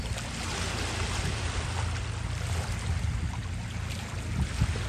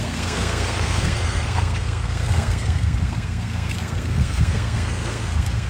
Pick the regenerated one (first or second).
second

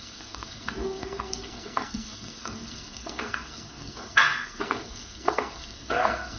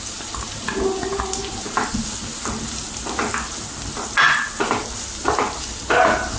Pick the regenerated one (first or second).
first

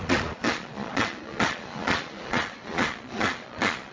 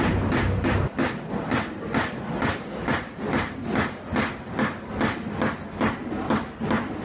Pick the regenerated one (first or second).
first